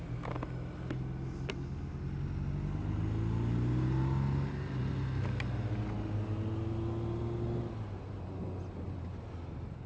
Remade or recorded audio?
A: recorded